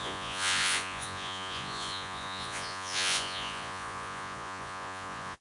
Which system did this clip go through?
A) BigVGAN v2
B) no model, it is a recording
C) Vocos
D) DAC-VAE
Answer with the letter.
C